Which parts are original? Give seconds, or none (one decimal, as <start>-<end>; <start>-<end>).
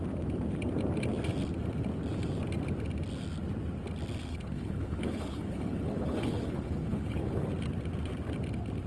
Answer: 0.0-4.3; 7.5-8.9